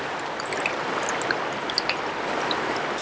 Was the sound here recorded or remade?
recorded